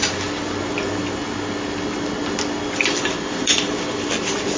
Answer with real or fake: real